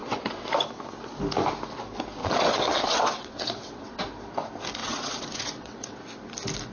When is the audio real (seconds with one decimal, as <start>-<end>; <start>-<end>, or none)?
0.5-2.2; 4.0-4.8; 6.0-6.7